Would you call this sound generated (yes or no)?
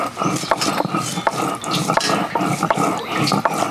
no